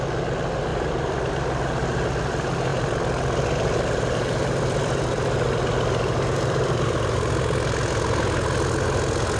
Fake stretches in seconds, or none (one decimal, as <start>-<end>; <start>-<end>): 0.7-1.3; 2.7-6.8